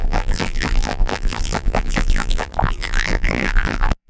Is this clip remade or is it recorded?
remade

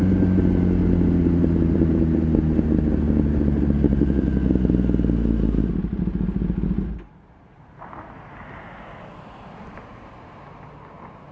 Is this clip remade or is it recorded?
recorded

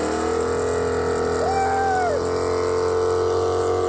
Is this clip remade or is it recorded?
recorded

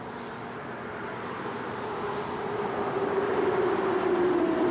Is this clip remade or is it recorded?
recorded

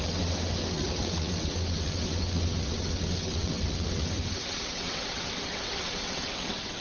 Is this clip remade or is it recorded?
remade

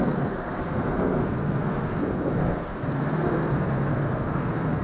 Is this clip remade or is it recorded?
remade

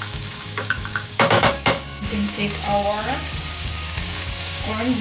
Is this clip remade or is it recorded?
remade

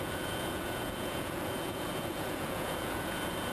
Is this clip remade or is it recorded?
remade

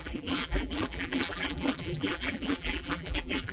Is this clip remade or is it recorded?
remade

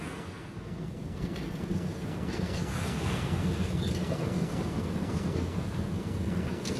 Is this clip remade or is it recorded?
remade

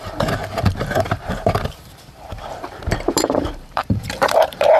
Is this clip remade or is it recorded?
remade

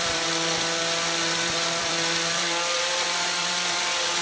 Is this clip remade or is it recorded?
remade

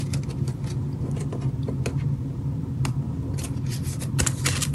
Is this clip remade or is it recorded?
recorded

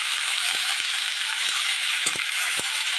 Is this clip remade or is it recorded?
remade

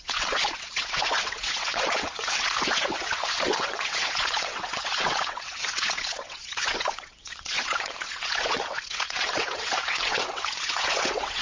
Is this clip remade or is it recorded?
remade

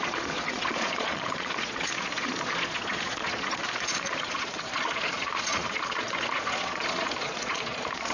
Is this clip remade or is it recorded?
remade